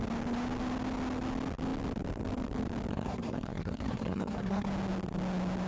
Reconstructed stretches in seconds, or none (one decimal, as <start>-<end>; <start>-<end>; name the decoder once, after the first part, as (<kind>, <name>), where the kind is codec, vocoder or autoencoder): 2.9-4.7 (codec, SNAC)